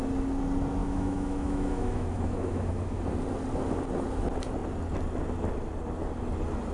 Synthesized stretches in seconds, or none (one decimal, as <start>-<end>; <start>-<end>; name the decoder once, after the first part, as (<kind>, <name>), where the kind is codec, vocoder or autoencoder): 0.8-3.0 (autoencoder, DAC-VAE)